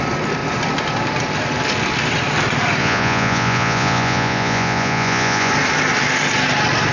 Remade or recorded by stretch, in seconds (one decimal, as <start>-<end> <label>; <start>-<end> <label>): 0.0-2.8 recorded; 2.8-5.5 remade; 5.5-6.9 recorded